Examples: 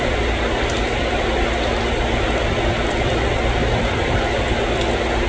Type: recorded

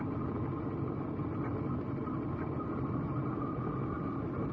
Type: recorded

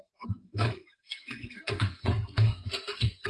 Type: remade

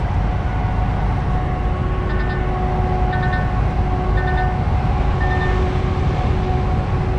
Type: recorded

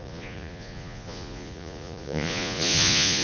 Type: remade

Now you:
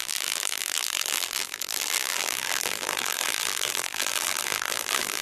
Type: remade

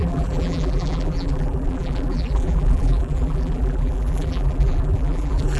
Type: remade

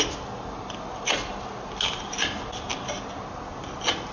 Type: recorded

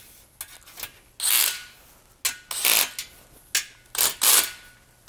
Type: recorded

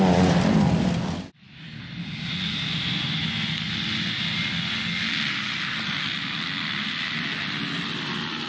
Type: recorded